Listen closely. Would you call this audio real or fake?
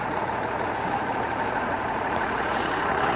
fake